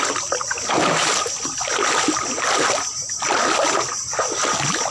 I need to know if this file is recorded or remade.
recorded